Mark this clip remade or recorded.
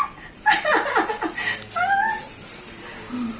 recorded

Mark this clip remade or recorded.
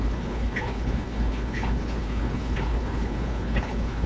remade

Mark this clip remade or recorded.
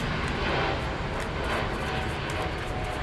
recorded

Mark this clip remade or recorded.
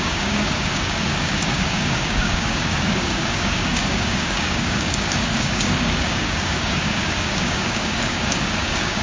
remade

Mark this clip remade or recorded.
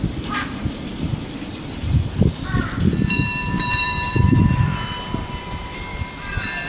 remade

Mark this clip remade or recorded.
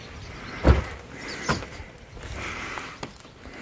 recorded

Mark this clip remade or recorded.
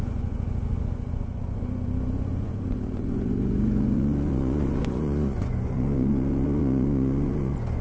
remade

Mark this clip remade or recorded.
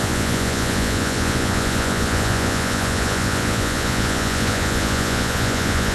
remade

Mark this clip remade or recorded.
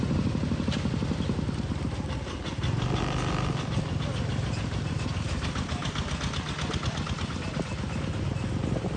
recorded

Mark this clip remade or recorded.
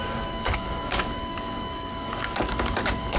remade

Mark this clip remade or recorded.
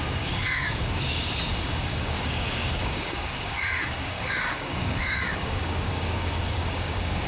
remade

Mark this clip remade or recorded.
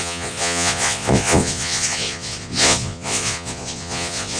remade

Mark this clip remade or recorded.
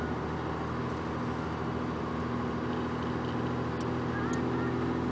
recorded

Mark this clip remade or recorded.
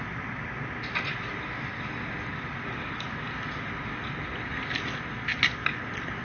recorded